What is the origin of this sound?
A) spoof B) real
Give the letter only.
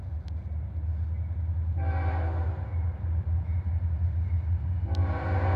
B